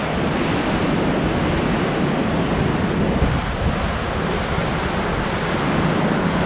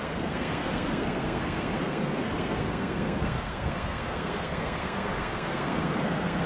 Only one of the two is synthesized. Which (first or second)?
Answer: second